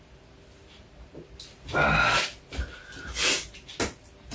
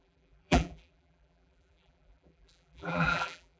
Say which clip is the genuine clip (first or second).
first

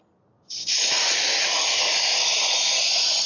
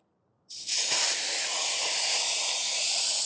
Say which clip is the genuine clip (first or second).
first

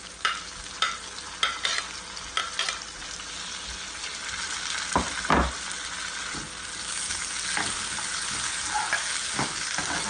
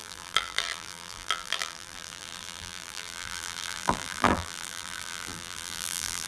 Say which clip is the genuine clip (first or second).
first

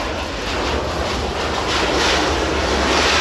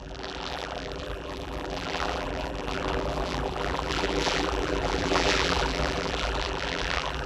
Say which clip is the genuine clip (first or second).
first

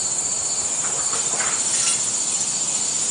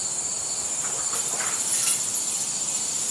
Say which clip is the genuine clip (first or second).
first